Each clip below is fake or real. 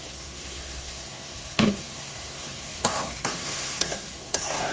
fake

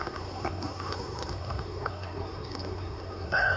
fake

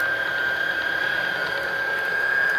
real